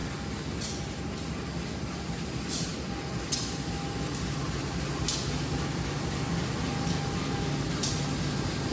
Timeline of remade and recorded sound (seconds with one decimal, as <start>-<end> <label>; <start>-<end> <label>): 0.0-8.7 recorded